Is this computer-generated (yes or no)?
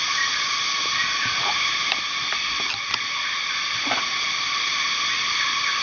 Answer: no